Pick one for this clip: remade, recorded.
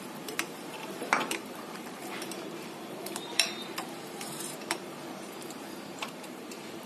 remade